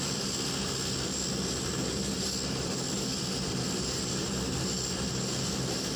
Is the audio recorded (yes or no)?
yes